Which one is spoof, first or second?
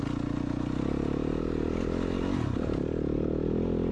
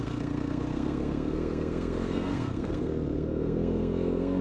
second